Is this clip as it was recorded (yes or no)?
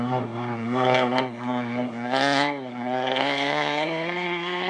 no